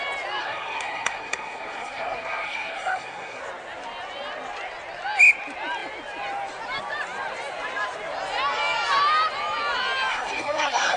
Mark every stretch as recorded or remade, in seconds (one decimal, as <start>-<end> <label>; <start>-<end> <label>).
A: 0.0-0.4 recorded; 0.4-3.4 remade; 3.4-10.1 recorded; 10.1-11.0 remade